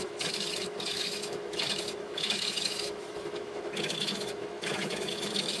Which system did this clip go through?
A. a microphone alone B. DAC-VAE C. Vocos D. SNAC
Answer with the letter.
B